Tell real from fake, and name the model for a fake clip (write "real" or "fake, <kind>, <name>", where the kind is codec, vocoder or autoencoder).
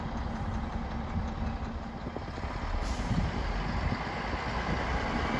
real